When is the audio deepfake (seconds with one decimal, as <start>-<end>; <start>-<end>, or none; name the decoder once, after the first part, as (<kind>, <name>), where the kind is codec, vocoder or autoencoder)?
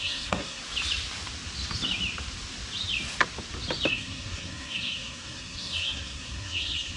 0.0-0.6 (codec, SNAC); 3.9-7.0